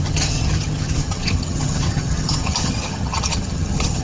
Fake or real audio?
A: fake